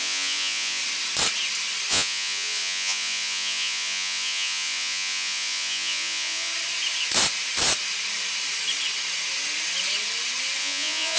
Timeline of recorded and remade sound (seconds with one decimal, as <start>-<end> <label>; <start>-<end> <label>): 0.0-0.8 remade; 0.8-1.9 recorded; 1.9-6.5 remade; 6.5-10.6 recorded; 10.6-11.2 remade